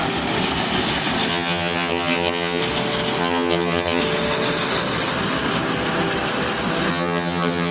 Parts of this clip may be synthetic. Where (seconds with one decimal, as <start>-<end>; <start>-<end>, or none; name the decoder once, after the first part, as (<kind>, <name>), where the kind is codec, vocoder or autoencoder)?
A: 1.3-2.6 (vocoder, HiFi-GAN); 3.2-4.0; 6.9-7.7